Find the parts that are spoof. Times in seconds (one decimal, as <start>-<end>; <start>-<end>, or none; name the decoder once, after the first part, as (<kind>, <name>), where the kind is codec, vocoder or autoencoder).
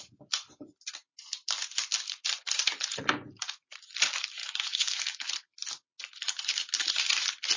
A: 4.4-5.3 (autoencoder, DAC-VAE)